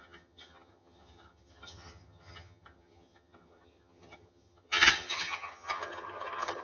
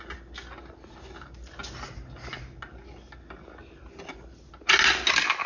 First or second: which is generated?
first